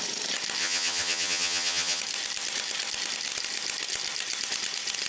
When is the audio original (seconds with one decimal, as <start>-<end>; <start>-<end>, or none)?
0.0-0.6; 2.0-5.1